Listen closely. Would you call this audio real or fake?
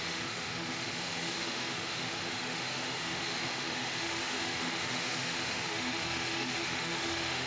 fake